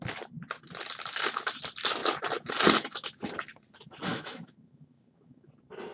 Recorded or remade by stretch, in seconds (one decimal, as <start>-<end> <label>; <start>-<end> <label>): 0.0-4.1 recorded; 4.1-5.5 remade; 5.5-5.9 recorded